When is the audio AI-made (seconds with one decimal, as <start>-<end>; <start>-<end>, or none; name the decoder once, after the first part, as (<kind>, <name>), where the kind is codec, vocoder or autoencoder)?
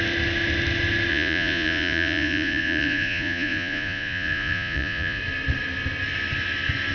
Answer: 1.1-5.2 (vocoder, Vocos)